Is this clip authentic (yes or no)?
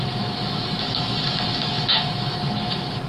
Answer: no